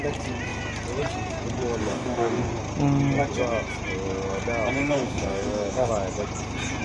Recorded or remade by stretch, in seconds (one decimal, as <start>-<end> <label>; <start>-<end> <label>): 0.0-1.8 recorded; 1.8-2.5 remade; 2.5-4.8 recorded; 4.8-5.9 remade; 5.9-6.8 recorded